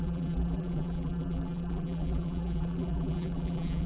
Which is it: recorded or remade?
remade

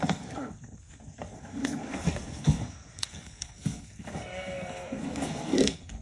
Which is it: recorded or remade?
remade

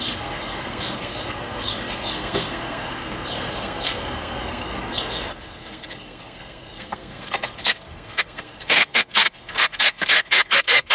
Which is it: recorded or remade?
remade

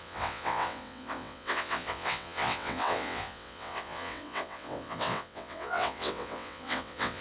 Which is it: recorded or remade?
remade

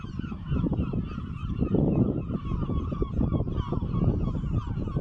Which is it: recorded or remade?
remade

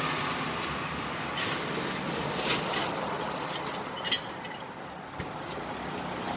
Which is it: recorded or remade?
recorded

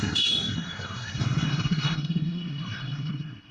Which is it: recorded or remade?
remade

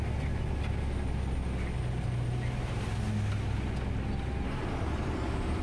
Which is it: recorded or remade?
recorded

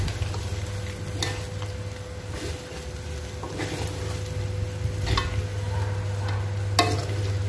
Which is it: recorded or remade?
recorded